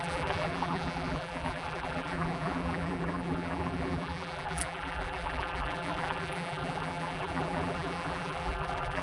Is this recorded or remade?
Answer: remade